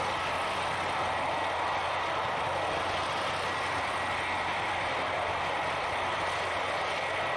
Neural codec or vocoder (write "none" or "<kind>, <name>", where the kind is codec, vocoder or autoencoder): none